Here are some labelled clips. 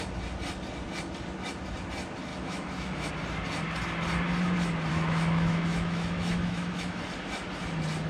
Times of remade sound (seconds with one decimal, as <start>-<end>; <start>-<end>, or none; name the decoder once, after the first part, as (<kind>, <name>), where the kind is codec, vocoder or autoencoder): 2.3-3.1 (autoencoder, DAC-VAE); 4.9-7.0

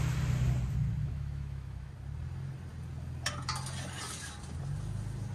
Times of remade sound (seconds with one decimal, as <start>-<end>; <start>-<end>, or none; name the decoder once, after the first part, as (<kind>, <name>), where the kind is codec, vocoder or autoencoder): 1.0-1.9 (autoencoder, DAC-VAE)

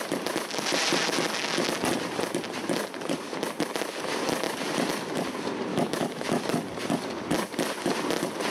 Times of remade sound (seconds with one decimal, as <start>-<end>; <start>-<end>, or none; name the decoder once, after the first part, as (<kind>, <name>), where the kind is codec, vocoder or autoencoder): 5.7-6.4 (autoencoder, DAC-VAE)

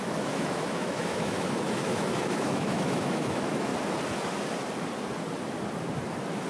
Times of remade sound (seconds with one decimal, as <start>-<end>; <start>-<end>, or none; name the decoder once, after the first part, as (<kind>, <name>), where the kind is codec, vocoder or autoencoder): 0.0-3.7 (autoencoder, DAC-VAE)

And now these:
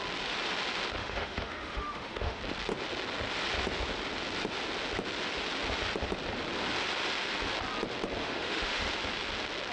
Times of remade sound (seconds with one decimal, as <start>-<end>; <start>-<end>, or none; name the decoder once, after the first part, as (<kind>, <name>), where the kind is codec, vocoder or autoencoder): 1.0-2.4 (autoencoder, DAC-VAE); 8.2-8.8

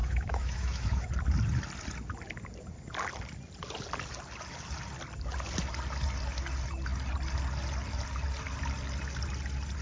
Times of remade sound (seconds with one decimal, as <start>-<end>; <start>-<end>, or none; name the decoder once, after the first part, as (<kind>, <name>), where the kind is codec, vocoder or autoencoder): 0.0-1.1 (autoencoder, DAC-VAE)

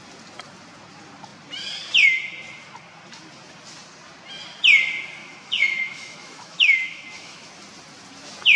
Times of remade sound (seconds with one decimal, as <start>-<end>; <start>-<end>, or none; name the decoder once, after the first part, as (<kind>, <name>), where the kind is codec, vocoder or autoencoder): 5.2-7.5 (autoencoder, DAC-VAE)

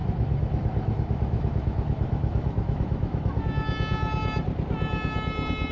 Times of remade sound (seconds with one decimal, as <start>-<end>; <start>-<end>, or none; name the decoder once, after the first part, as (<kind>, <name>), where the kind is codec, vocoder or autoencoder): 0.0-3.4 (autoencoder, DAC-VAE)